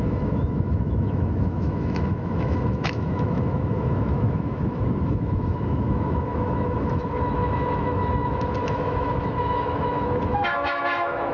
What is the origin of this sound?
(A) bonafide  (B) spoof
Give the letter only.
B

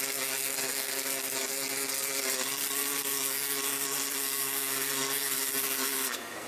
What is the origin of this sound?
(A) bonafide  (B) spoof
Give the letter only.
B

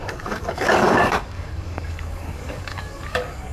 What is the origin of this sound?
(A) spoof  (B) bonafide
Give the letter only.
A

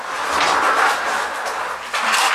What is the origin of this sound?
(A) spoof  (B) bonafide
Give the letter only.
B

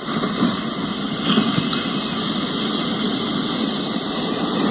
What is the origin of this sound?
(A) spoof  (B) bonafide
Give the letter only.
B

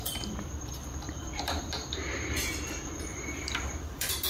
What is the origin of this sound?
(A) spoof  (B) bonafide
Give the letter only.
A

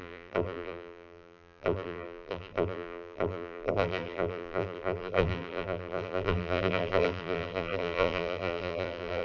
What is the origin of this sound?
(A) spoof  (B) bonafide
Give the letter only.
A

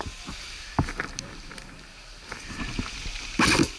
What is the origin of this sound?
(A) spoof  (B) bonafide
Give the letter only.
B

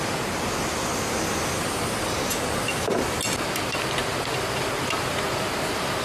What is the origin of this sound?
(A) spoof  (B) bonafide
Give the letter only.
B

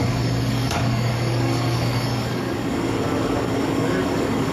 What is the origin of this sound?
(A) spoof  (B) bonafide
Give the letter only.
A